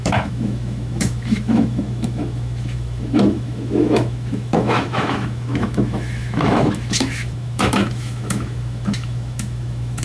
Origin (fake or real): fake